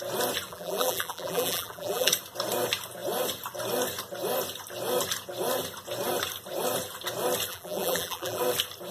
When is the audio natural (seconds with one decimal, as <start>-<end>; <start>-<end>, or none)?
0.0-0.5; 2.1-7.5; 8.4-8.9